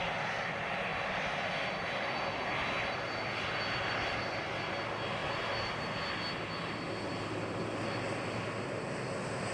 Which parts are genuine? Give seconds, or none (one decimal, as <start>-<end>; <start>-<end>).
0.0-9.5